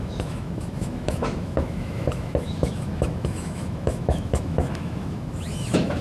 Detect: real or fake fake